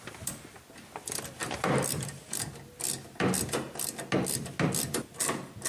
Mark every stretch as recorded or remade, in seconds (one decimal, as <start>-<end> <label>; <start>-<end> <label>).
0.0-1.4 recorded; 1.4-2.4 remade; 2.4-5.7 recorded